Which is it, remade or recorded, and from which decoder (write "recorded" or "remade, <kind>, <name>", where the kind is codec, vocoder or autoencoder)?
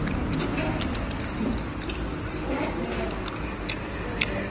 recorded